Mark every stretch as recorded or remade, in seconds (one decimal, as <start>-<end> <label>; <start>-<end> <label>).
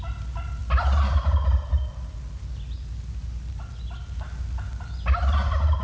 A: 0.0-5.8 recorded